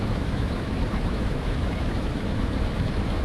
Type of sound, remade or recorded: remade